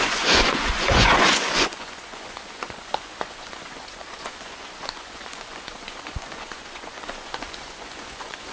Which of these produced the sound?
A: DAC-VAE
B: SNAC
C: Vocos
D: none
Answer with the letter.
C